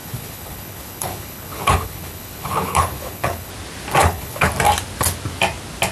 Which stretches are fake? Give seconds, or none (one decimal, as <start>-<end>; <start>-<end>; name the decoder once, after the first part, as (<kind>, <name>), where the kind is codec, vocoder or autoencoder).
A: 0.0-3.5 (codec, HILCodec); 4.0-4.5